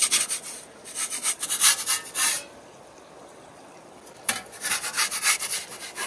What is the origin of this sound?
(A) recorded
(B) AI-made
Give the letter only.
A